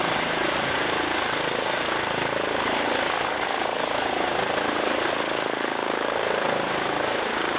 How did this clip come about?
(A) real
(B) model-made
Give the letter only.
A